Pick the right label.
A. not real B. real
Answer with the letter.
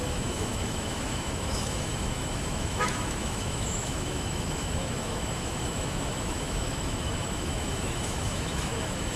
A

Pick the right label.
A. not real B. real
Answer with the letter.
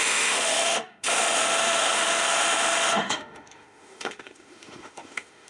A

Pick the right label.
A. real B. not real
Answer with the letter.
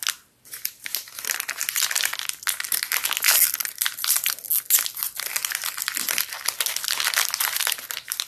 A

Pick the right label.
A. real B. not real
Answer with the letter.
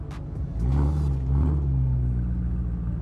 A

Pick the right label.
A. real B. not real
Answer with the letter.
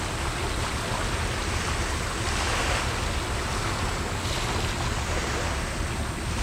A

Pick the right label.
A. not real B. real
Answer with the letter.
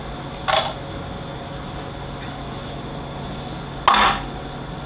B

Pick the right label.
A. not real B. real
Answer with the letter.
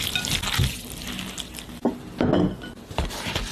B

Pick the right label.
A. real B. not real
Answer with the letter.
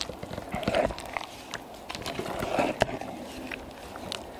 A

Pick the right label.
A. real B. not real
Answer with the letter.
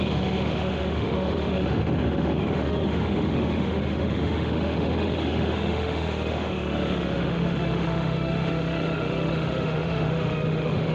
B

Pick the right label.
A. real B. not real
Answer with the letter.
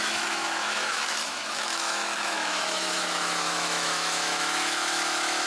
B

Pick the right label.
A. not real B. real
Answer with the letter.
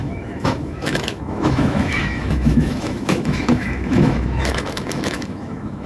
A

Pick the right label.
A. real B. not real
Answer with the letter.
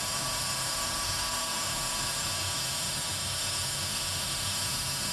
B